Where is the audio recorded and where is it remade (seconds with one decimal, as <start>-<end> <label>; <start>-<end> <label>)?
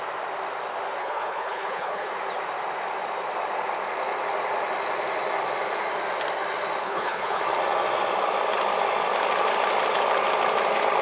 0.0-1.0 recorded; 1.0-2.1 remade; 2.1-6.8 recorded; 6.8-7.4 remade; 7.4-11.0 recorded